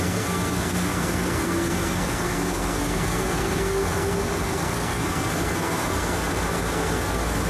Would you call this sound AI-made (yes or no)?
yes